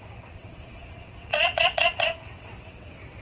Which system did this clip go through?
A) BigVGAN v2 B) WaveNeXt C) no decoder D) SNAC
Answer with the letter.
B